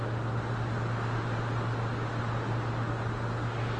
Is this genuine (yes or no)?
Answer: yes